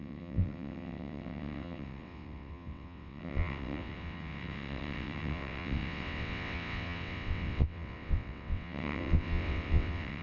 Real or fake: fake